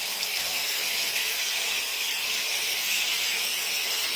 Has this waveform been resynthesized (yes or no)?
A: yes